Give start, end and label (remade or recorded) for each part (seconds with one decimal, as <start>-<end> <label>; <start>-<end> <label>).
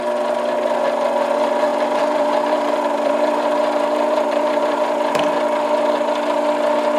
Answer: 0.0-1.7 recorded; 1.7-5.1 remade; 5.1-7.0 recorded